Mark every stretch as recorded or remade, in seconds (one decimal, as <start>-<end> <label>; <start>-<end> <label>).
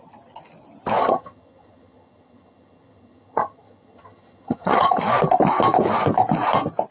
0.0-1.0 recorded; 1.0-5.0 remade; 5.0-6.9 recorded